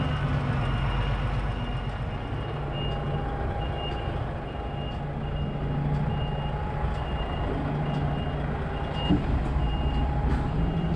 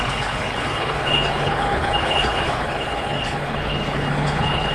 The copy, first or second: second